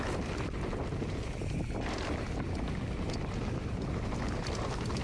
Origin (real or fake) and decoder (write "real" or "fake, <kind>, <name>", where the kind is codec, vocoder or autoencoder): real